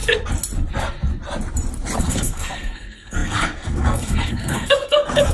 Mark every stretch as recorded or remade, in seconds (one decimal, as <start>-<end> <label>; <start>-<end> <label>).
0.0-2.0 recorded; 2.0-5.3 remade